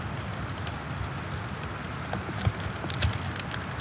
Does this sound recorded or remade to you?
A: recorded